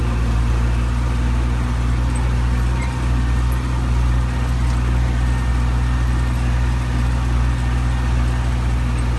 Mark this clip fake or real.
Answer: real